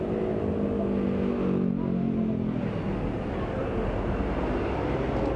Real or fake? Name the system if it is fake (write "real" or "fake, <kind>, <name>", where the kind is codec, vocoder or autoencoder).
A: real